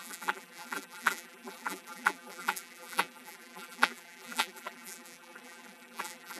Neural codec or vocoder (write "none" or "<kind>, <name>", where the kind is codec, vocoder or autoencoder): vocoder, BigVGAN v2